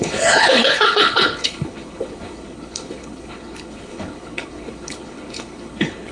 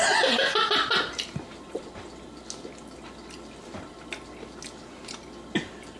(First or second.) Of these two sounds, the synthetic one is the first